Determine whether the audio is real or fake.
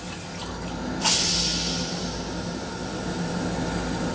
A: real